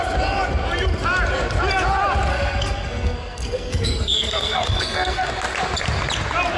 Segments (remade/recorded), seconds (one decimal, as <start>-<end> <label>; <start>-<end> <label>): 0.0-2.3 recorded; 2.3-5.3 remade; 5.3-6.6 recorded